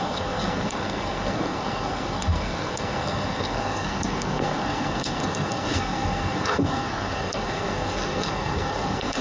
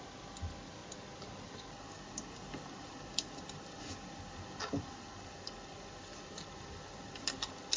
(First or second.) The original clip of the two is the second